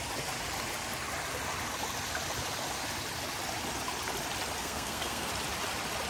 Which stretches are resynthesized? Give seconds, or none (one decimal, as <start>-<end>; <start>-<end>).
4.6-5.3